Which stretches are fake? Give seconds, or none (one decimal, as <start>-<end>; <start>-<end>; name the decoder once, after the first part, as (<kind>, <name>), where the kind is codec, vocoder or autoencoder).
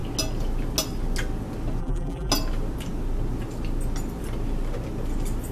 1.8-2.3 (vocoder, BigVGAN v2)